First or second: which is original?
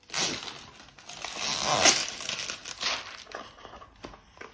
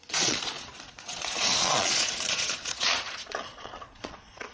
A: first